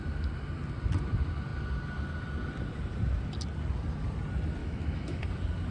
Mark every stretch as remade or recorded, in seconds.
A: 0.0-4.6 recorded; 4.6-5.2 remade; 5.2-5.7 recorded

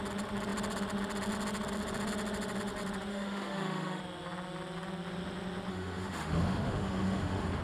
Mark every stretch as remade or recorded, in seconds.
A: 0.0-3.1 recorded; 3.1-4.0 remade; 4.0-5.7 recorded; 5.7-7.6 remade

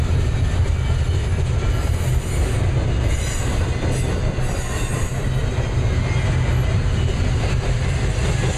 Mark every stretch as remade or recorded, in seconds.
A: 0.0-8.6 recorded

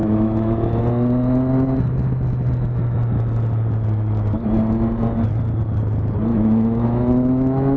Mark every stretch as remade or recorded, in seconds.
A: 0.0-0.8 remade; 0.8-6.3 recorded; 6.3-7.8 remade

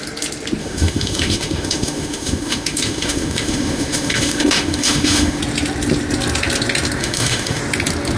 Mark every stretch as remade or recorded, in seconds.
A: 0.0-0.6 recorded; 0.6-5.4 remade; 5.4-7.0 recorded; 7.0-7.6 remade; 7.6-8.2 recorded

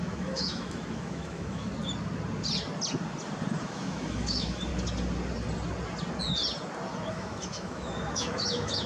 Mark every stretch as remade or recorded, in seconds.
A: 0.0-1.7 remade; 1.7-3.6 recorded; 3.6-4.7 remade; 4.7-7.1 recorded; 7.1-8.9 remade

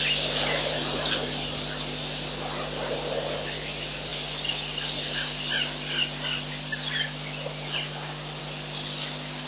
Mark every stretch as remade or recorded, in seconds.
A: 0.0-9.5 recorded